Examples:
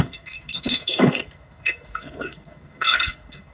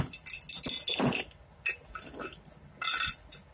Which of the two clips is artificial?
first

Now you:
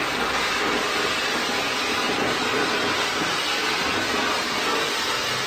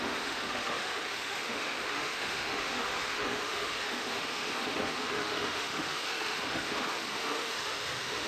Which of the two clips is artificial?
second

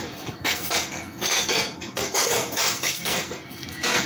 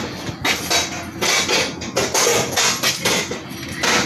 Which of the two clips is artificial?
first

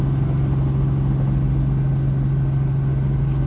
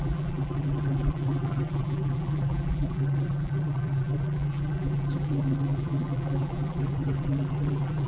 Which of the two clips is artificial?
second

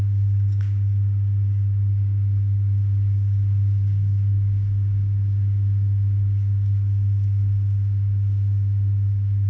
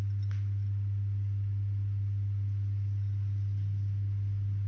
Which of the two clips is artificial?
first